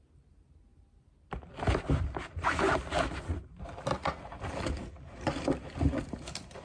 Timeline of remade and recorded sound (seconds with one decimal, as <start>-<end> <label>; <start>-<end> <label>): 0.0-6.6 recorded